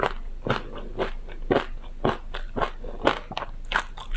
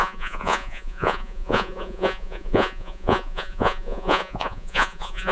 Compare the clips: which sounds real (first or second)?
first